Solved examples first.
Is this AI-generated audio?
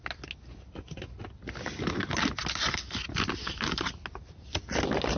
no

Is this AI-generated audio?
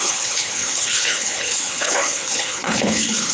yes